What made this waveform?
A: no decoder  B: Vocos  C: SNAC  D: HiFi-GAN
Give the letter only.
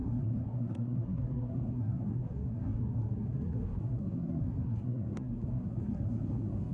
C